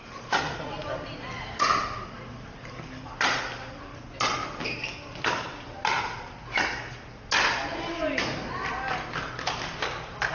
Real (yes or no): yes